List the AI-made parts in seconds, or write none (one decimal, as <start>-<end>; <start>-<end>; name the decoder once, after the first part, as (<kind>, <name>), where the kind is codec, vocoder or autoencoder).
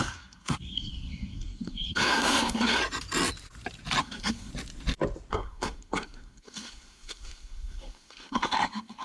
0.0-2.8 (codec, SNAC); 4.0-4.5; 5.3-9.0